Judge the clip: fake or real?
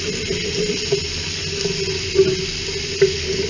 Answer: real